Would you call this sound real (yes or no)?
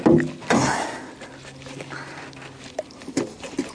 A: yes